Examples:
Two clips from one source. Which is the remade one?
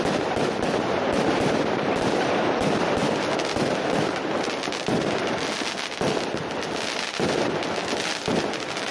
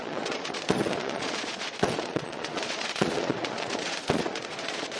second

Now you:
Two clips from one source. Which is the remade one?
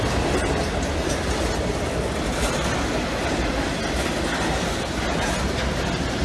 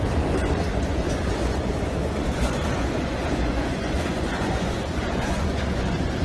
second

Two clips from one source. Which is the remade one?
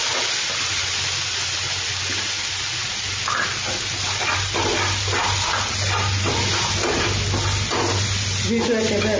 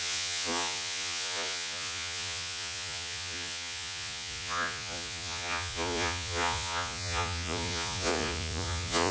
second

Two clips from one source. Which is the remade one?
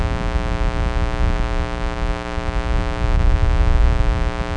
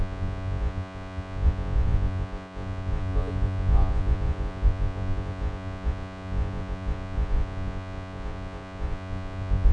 second